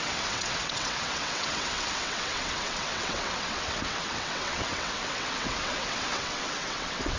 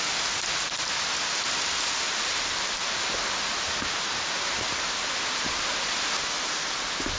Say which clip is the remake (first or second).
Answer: first